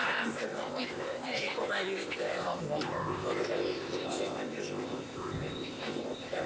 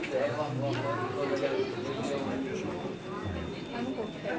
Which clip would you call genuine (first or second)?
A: second